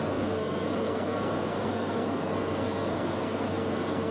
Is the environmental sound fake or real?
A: fake